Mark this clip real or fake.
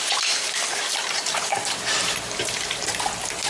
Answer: fake